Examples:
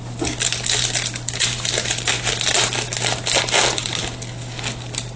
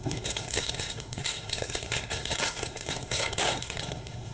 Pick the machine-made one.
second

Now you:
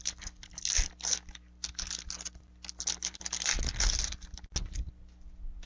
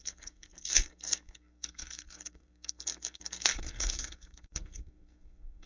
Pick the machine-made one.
second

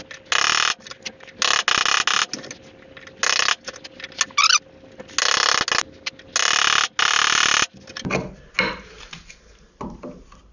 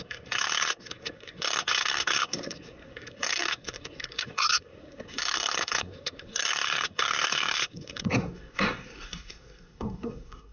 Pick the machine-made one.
second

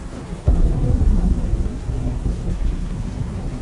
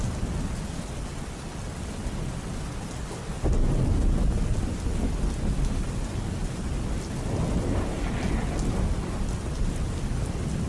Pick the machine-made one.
first